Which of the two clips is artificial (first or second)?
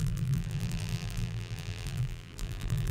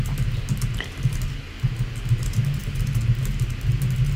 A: first